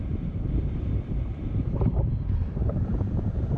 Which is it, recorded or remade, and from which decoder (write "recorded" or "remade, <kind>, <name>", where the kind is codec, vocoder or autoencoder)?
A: remade, vocoder, BigVGAN v2